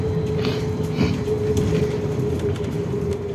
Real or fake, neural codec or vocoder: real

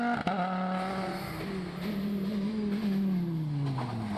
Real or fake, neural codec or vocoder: real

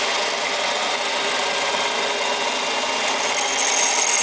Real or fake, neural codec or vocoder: real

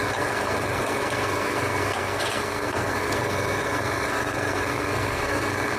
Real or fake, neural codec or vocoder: fake, codec, SNAC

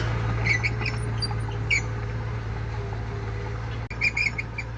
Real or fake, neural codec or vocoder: real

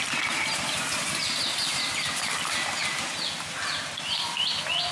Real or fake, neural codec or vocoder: real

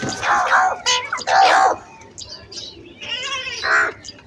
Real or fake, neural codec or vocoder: real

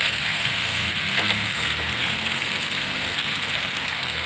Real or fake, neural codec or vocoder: fake, codec, SNAC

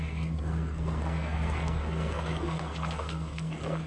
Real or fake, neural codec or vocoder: fake, codec, SNAC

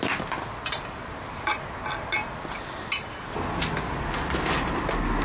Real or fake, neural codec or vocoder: real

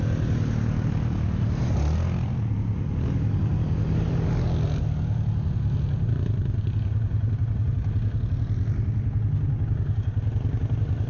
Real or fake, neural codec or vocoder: real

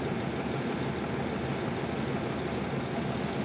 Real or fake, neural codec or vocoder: real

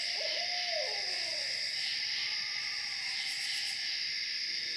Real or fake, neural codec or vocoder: real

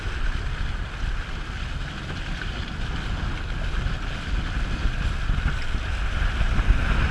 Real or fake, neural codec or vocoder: real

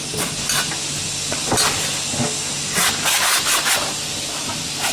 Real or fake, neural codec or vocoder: real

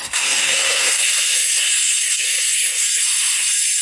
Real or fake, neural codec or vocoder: fake, codec, SNAC